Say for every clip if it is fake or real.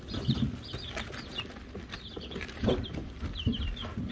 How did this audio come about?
fake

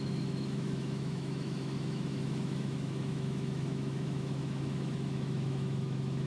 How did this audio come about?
fake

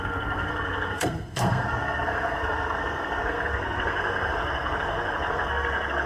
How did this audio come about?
fake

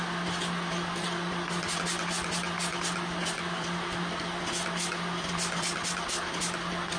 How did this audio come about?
real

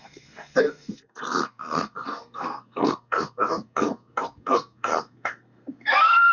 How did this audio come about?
fake